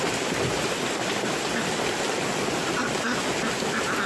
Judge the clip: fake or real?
real